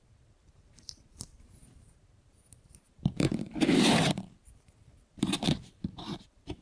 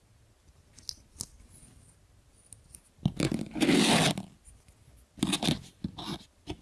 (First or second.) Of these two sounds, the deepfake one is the first